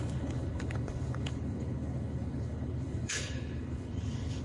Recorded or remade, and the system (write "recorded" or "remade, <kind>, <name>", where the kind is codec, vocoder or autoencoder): remade, codec, HILCodec